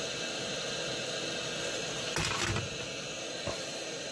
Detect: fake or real real